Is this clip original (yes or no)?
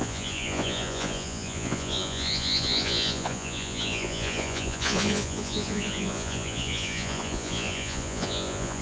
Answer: no